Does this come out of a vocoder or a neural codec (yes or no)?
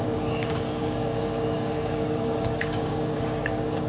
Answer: yes